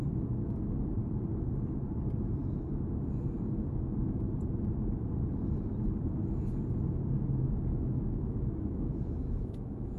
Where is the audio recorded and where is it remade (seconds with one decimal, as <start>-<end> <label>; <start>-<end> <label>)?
0.0-7.7 recorded; 7.7-10.0 remade